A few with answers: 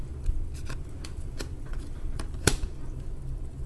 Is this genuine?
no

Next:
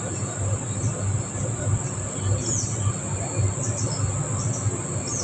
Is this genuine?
yes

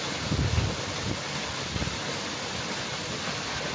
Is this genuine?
yes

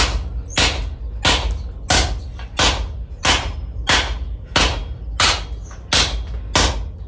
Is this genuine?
yes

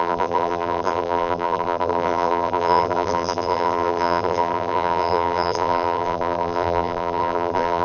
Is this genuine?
no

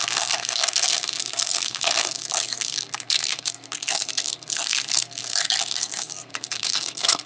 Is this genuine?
no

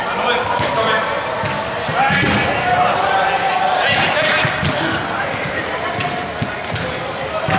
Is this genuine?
yes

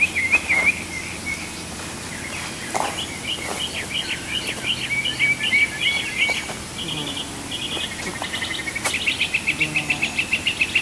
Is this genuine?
yes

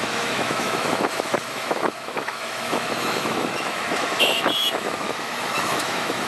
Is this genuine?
no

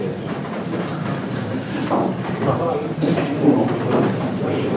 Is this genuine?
no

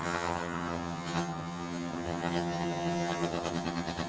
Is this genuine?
no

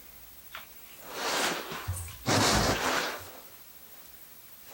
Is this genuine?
no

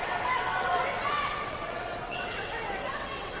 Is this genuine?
no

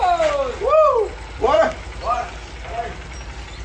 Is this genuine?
yes